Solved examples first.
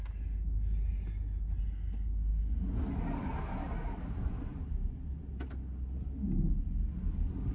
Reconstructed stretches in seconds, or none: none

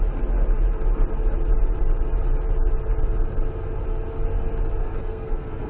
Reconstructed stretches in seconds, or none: 4.8-5.7 (codec, SNAC)

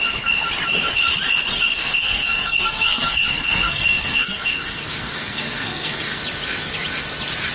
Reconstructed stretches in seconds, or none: 1.7-6.2 (codec, SNAC)

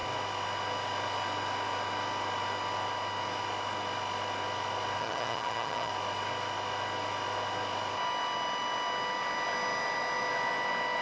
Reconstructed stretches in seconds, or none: 5.0-5.9 (vocoder, HiFi-GAN)

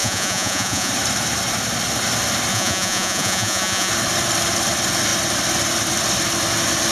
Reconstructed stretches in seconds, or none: 0.0-0.9 (vocoder, Vocos); 2.5-3.9